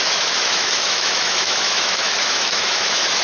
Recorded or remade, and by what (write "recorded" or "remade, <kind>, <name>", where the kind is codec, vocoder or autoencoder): remade, autoencoder, DAC-VAE